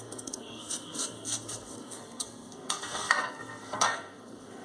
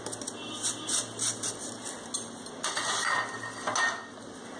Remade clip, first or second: first